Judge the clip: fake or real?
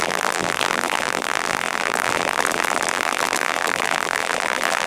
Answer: fake